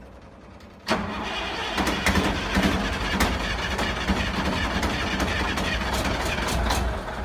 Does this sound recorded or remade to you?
recorded